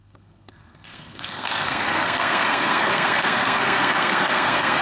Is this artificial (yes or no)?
yes